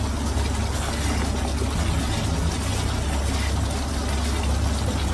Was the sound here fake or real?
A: real